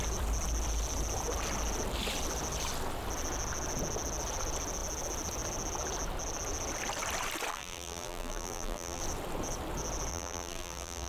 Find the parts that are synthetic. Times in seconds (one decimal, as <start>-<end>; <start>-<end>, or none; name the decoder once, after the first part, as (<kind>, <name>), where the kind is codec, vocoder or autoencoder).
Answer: 7.5-9.0 (vocoder, BigVGAN v2); 10.1-11.1